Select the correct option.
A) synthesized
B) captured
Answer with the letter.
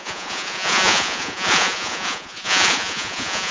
A